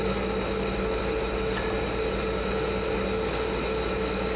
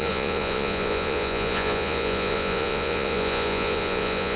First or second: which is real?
first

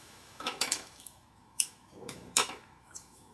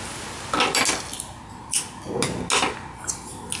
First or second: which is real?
second